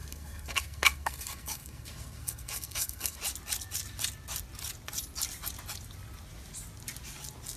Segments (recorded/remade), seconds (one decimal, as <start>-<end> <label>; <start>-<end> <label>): 0.0-3.2 remade; 3.2-7.6 recorded